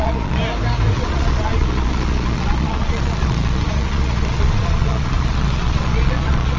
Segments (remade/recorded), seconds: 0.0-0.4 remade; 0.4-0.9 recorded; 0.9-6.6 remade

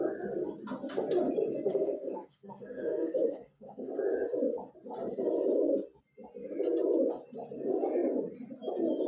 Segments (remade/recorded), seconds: 0.0-1.7 recorded; 1.7-3.9 remade; 3.9-9.1 recorded